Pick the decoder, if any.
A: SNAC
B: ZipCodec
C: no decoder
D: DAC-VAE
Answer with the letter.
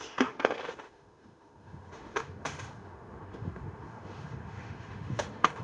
D